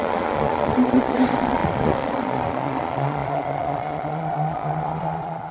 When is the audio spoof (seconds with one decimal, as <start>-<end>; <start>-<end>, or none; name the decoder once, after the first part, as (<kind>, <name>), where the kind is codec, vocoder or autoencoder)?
0.0-5.5 (vocoder, Vocos)